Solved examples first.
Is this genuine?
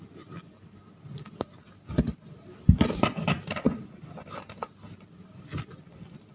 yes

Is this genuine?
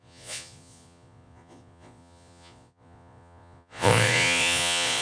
no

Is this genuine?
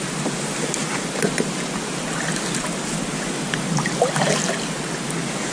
yes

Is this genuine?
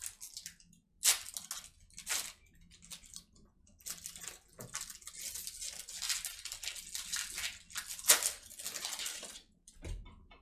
yes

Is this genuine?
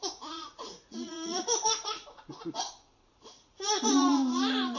no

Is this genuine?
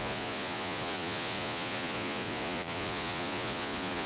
no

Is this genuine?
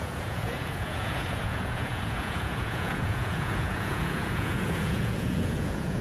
no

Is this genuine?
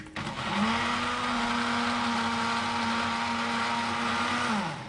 yes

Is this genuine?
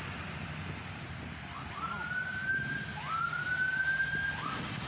yes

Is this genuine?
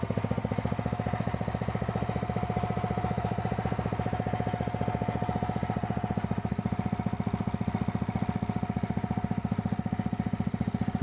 yes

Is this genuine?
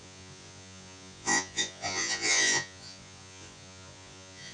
no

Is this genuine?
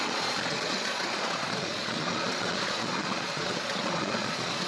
no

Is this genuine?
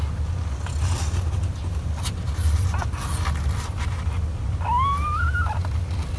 yes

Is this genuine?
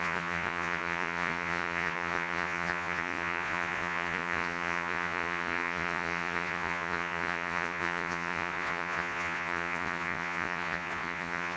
no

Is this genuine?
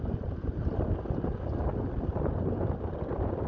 yes